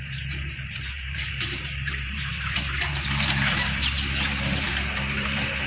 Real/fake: fake